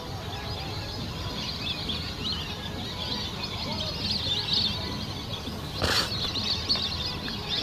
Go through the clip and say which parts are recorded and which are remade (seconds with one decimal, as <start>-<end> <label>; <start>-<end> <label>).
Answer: 0.0-7.6 recorded